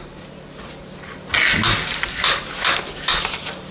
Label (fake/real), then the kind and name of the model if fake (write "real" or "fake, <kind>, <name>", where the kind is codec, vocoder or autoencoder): real